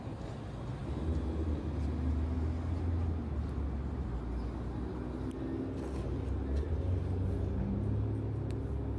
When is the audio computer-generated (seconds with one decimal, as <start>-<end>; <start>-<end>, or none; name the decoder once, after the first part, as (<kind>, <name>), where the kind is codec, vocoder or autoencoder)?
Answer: none